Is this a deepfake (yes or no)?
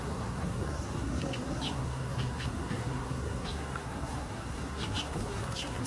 yes